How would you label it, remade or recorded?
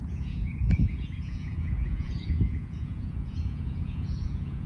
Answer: remade